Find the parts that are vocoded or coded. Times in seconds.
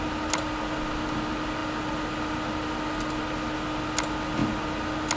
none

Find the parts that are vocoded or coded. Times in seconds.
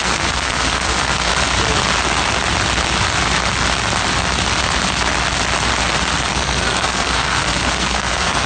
0.0-1.3 (codec, SNAC); 6.3-8.5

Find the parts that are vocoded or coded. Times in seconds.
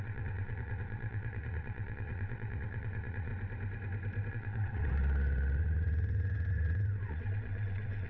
0.0-3.3 (vocoder, WaveNeXt); 4.3-8.1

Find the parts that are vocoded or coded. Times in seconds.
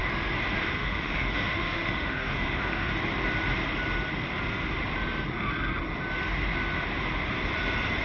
0.6-2.9 (autoencoder, DAC-VAE)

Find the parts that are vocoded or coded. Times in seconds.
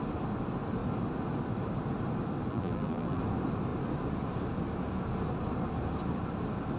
2.5-3.2 (vocoder, BigVGAN v2)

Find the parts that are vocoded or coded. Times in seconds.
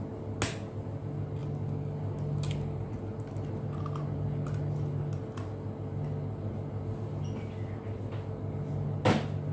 none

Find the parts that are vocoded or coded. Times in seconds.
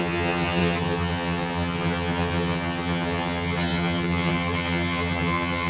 0.0-5.7 (vocoder, HiFi-GAN)